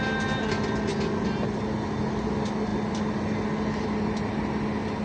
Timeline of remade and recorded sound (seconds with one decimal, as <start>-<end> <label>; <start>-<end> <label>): 0.0-5.0 recorded